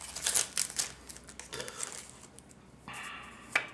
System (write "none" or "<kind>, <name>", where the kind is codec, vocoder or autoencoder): none